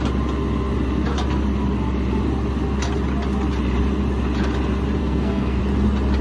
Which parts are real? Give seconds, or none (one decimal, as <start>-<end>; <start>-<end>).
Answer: 0.0-5.0; 5.6-6.2